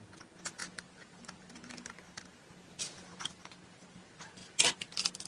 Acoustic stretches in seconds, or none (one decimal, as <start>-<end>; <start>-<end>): 0.0-5.3